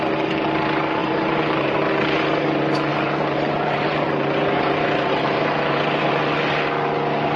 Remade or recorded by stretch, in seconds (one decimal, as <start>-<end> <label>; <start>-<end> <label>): 0.0-1.0 recorded; 1.0-1.9 remade; 1.9-2.9 recorded; 2.9-6.3 remade; 6.3-7.4 recorded